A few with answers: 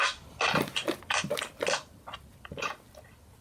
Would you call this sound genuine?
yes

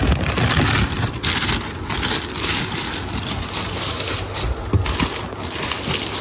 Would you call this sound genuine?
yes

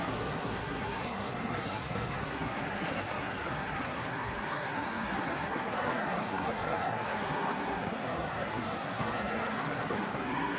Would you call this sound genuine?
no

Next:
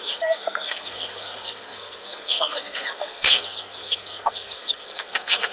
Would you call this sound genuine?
no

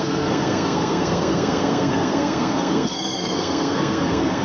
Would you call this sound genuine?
no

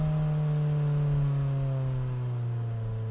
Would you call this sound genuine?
yes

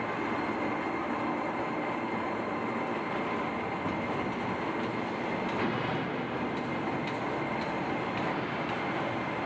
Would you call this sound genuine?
yes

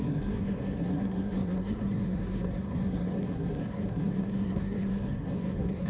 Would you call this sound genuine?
no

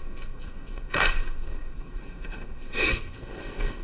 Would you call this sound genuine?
no